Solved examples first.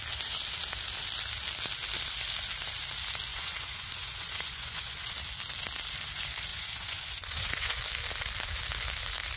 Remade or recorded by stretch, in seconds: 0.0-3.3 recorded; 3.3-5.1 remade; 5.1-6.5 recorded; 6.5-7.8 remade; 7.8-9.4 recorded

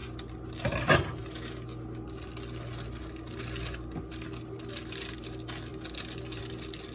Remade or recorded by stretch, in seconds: 0.0-6.9 recorded

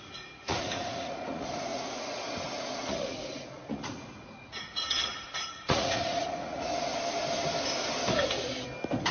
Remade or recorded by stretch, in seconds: 0.0-6.9 remade; 6.9-9.1 recorded

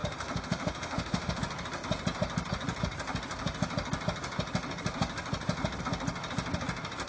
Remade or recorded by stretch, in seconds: 0.0-1.4 remade; 1.4-7.1 recorded

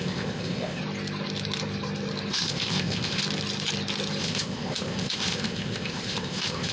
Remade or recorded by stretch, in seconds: 0.0-0.8 remade; 0.8-2.3 recorded; 2.3-3.2 remade; 3.2-4.2 recorded; 4.2-6.7 remade